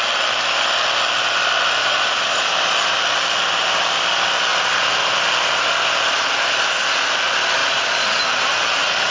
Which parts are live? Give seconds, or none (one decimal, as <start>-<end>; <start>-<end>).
0.0-1.8; 2.5-7.6; 8.2-9.1